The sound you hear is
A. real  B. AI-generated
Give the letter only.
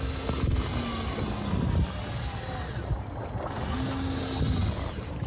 A